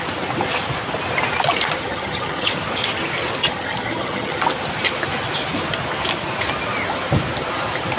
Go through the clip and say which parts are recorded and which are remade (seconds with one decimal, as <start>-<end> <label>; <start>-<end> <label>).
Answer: 0.0-1.8 recorded; 1.8-2.5 remade; 2.5-3.4 recorded; 3.4-4.4 remade; 4.4-8.0 recorded

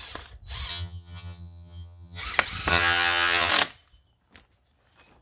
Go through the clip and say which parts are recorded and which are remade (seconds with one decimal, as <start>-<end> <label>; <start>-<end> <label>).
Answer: 0.0-0.7 recorded; 0.7-2.2 remade; 2.2-2.7 recorded; 2.7-3.5 remade; 3.5-5.2 recorded

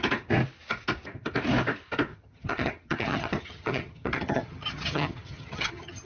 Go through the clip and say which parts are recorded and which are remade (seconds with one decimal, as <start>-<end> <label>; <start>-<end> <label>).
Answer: 0.0-2.1 recorded; 2.1-6.1 remade

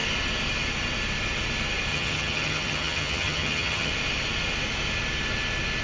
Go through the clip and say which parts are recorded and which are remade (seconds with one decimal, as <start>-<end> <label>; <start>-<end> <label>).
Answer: 0.0-1.9 recorded; 1.9-3.9 remade; 3.9-5.8 recorded